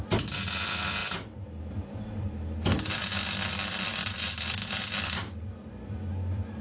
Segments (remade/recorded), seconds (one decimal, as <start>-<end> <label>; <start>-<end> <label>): 0.0-6.6 recorded